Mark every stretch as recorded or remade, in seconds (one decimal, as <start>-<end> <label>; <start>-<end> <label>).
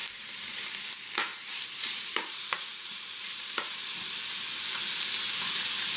0.0-0.7 remade; 0.7-1.3 recorded; 1.3-4.2 remade; 4.2-6.0 recorded